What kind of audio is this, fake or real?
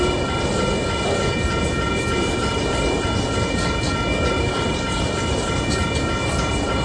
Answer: real